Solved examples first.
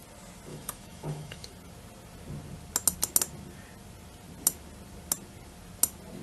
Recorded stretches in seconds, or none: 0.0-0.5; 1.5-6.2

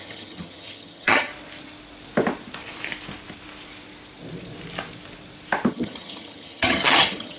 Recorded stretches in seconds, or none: 1.3-5.7

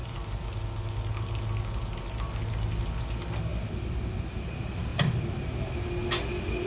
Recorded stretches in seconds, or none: 0.0-6.7

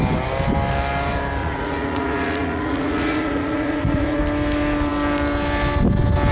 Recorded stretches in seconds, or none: 0.0-1.4; 4.2-6.3